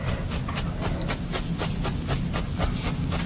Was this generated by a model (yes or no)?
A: no